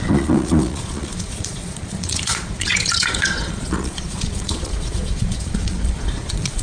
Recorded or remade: remade